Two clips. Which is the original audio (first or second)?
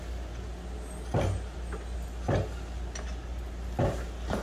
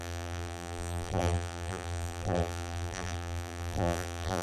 first